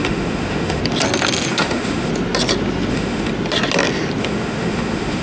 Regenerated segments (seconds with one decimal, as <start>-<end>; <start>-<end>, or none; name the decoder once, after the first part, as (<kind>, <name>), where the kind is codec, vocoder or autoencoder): 0.0-0.8 (autoencoder, DAC-VAE); 1.5-2.1; 2.9-3.3; 4.2-5.2